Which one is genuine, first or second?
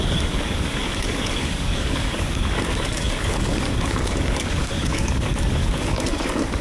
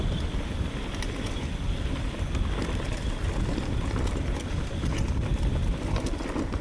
second